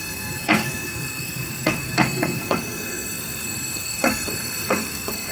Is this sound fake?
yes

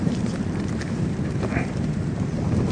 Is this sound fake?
yes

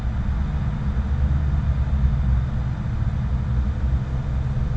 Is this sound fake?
no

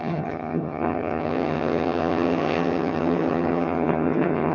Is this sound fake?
yes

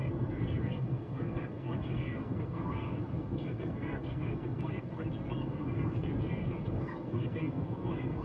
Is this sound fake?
yes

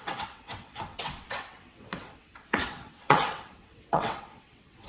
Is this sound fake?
yes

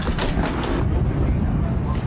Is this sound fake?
no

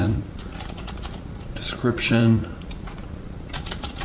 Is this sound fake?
yes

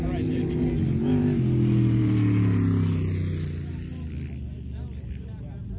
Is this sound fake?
no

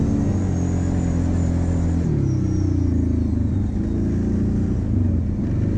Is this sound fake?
no